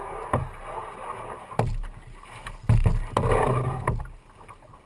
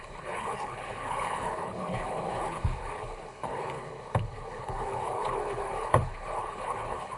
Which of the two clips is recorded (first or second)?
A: first